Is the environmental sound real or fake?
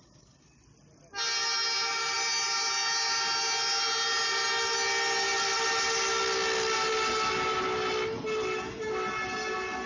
real